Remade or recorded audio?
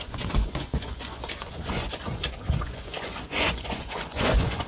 remade